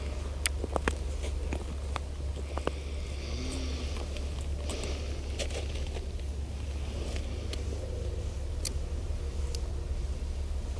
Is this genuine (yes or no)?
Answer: yes